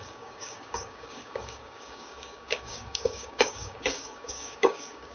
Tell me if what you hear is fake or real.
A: fake